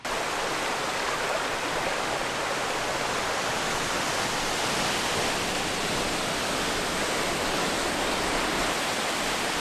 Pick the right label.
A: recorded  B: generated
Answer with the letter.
A